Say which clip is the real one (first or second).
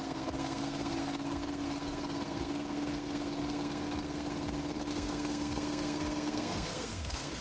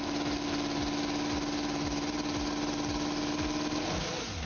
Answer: second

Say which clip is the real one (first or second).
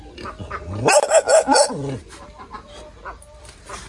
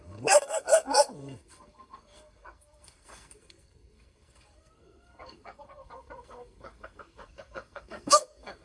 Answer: first